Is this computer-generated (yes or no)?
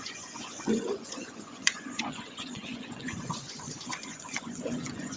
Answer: yes